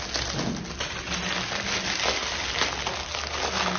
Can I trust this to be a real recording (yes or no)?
yes